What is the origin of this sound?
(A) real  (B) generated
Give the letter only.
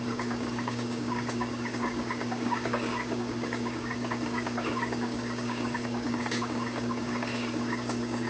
B